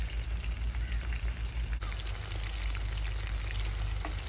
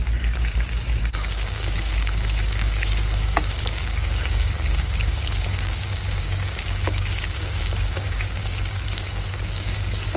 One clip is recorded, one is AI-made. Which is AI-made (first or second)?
second